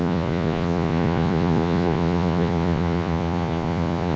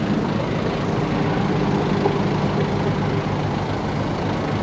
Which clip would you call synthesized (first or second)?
first